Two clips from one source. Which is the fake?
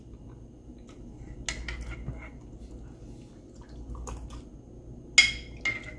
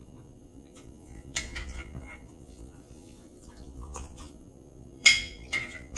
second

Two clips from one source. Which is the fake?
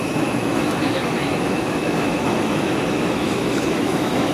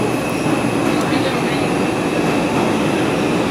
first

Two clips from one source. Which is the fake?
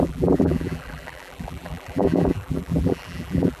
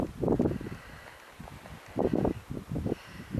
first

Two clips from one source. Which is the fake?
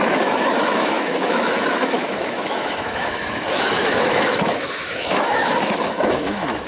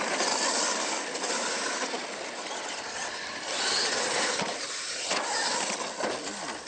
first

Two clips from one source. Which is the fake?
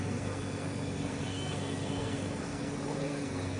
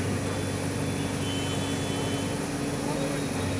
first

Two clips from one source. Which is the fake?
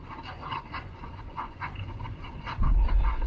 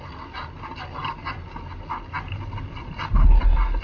first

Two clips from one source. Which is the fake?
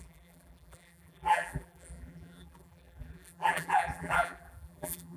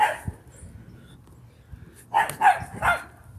first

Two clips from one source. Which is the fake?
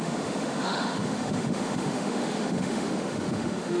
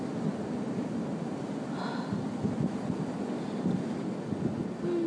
first